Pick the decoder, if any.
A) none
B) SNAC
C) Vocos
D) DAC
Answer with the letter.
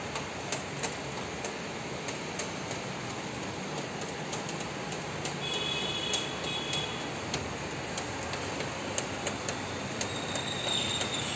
A